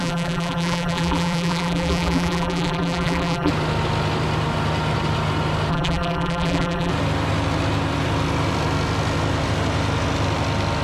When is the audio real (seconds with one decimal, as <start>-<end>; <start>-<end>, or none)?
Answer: 3.5-5.7; 6.9-10.8